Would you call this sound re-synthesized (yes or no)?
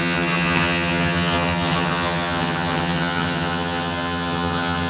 yes